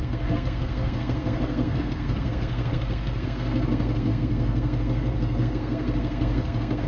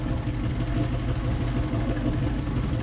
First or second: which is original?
second